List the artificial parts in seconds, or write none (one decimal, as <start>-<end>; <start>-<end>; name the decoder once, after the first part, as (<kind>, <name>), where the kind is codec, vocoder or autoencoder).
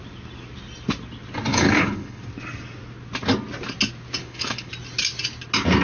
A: 1.5-2.2 (codec, HILCodec); 4.2-4.7